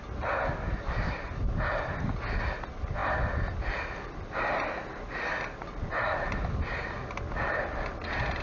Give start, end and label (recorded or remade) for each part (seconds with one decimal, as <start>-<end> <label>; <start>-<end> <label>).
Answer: 0.0-8.4 recorded